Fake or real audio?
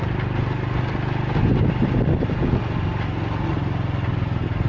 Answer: real